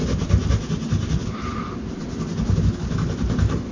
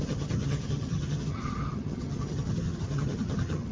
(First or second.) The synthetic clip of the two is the second